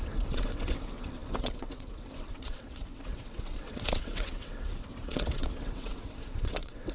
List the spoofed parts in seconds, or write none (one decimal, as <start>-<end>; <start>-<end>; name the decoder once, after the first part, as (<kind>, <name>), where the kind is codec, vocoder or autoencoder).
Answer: 0.0-6.9 (vocoder, WaveNeXt)